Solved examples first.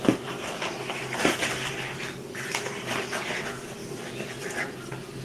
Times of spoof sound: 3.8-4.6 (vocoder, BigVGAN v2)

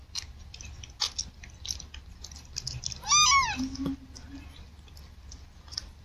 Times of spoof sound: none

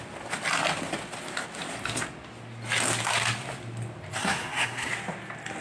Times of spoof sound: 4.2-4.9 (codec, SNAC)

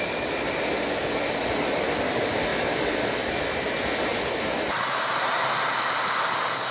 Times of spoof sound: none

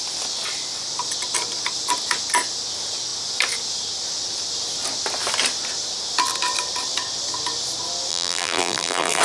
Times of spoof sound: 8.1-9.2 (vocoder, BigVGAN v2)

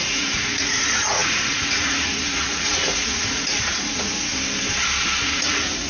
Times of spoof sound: 0.0-4.3 (vocoder, Vocos); 5.2-5.9

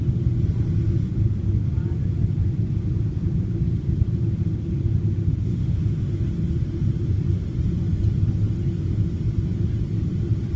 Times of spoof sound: 5.3-6.2 (autoencoder, DAC-VAE)

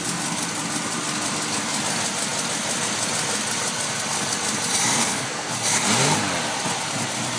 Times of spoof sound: 4.9-5.5 (codec, SNAC)